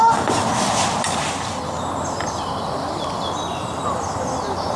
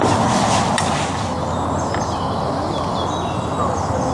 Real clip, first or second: second